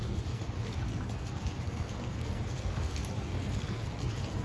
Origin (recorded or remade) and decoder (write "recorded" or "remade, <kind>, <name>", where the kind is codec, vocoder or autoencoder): remade, codec, SNAC